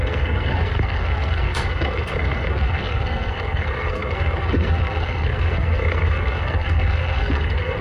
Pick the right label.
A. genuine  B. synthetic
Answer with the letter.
B